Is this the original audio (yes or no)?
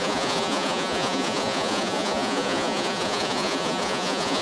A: no